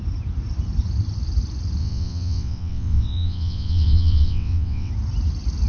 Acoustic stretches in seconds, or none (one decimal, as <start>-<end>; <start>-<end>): 0.0-1.8; 4.9-5.7